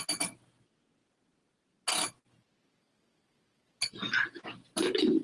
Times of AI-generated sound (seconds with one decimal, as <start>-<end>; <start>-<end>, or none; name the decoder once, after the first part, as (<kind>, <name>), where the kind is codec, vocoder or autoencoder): none